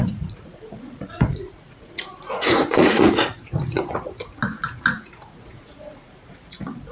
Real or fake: fake